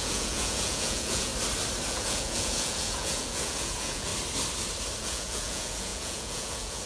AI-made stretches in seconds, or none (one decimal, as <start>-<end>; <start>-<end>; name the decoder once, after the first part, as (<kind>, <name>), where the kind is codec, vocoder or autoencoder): 0.0-1.3 (vocoder, Vocos); 1.9-4.1; 5.0-6.9